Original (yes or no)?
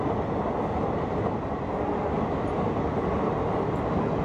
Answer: yes